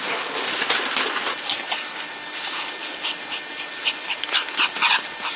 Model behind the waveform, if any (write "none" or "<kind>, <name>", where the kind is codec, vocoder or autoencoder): none